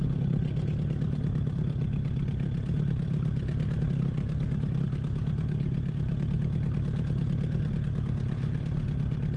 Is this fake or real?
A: real